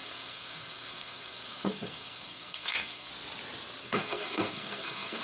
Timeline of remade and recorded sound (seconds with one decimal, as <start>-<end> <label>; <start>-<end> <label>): 0.0-3.1 remade; 3.1-3.8 recorded; 3.8-5.2 remade